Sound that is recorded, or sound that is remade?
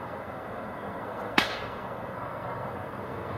remade